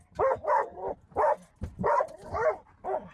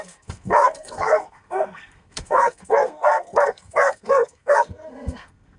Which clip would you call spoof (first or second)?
second